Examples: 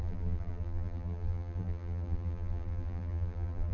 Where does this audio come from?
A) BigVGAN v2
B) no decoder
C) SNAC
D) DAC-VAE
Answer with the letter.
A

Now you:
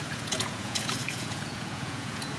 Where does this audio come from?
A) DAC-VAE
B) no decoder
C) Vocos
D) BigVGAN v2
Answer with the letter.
C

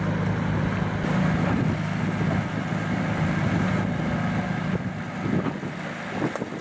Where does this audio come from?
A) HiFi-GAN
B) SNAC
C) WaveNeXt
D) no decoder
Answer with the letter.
D